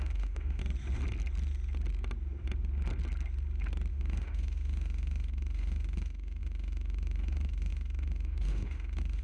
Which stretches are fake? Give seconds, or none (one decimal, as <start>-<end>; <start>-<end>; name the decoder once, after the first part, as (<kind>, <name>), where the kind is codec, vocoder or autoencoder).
0.0-0.6 (autoencoder, DAC-VAE); 3.9-9.2